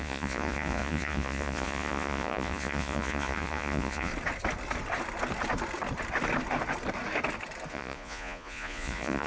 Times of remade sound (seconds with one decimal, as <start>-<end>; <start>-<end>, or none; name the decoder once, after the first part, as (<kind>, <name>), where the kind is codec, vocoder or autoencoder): 0.0-4.1 (vocoder, Vocos); 7.7-9.3